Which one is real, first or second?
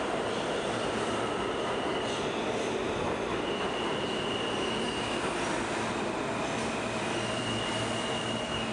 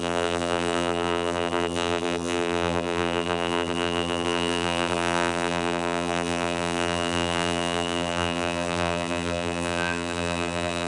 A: first